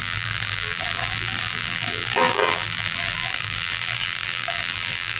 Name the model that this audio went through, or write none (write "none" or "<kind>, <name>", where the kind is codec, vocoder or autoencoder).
vocoder, BigVGAN v2